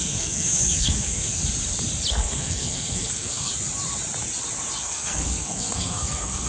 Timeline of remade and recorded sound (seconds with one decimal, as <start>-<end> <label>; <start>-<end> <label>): 0.0-1.4 remade; 1.4-2.1 recorded; 2.1-3.5 remade; 3.5-4.8 recorded; 4.8-6.5 remade